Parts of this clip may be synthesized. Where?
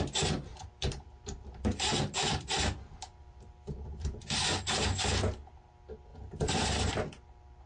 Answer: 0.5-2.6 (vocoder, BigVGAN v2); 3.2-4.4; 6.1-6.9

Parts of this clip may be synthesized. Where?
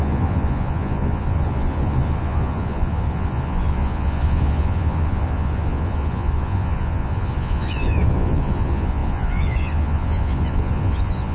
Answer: 0.0-11.3 (vocoder, Vocos)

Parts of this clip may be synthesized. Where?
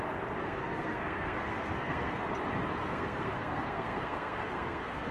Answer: 0.4-2.2 (codec, SNAC); 2.8-5.1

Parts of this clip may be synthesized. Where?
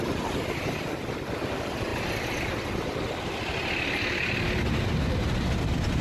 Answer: none